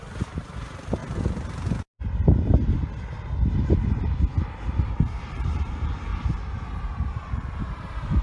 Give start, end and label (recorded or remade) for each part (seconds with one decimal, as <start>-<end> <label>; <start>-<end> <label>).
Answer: 0.0-1.0 remade; 1.0-5.2 recorded; 5.2-6.1 remade; 6.1-6.8 recorded; 6.8-8.2 remade